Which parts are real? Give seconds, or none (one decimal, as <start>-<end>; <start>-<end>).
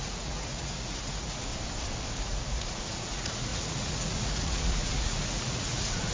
1.5-2.2